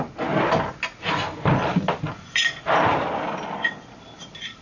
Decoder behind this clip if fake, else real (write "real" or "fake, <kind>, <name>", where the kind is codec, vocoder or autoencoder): real